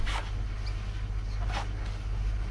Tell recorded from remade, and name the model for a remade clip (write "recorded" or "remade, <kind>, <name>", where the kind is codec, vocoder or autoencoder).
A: recorded